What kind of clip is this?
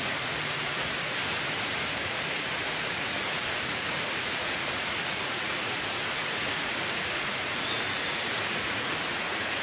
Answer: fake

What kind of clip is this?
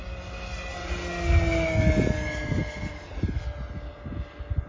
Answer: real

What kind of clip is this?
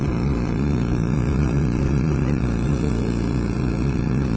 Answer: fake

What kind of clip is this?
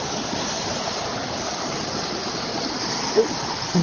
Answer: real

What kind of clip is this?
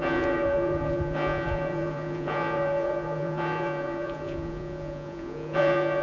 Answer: fake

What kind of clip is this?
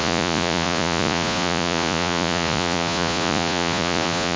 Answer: fake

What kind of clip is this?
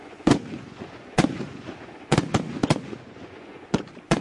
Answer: fake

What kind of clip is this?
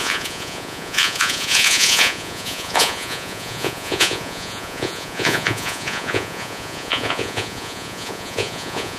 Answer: fake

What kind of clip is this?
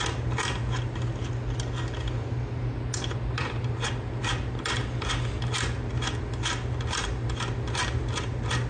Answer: real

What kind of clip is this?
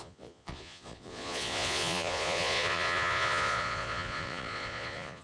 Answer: fake